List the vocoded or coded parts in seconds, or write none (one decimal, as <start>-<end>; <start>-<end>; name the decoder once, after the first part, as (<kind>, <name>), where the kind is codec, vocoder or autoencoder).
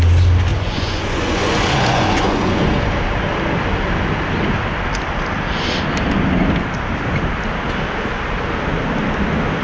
0.5-2.7 (vocoder, Vocos)